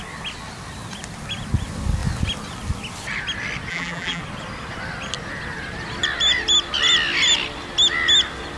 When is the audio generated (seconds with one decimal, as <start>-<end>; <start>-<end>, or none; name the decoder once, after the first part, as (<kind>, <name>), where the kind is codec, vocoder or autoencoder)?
3.7-4.2 (vocoder, BigVGAN v2)